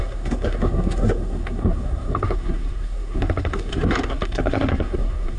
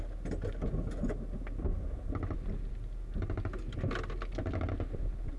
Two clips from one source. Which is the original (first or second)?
second